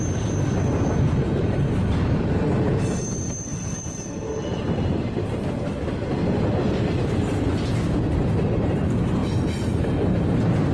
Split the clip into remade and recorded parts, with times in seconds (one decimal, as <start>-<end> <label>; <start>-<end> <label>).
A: 0.0-3.5 recorded; 3.5-5.7 remade; 5.7-9.2 recorded; 9.2-10.7 remade